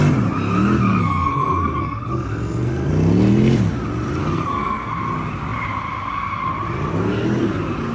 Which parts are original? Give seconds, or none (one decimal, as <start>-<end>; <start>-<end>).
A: 0.0-0.9; 2.9-4.2; 4.9-7.9